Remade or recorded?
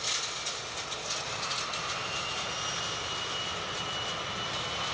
recorded